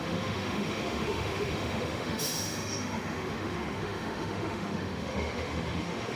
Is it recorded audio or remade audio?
remade